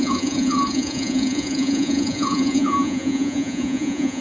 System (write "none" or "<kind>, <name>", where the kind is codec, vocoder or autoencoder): vocoder, Vocos